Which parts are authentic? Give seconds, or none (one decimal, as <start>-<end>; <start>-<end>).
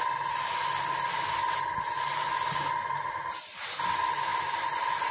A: 0.0-5.1